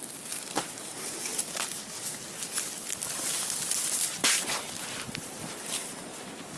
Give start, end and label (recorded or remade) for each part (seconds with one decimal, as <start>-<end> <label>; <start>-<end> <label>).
0.0-6.6 recorded